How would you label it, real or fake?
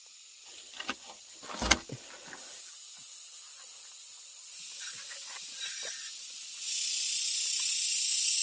real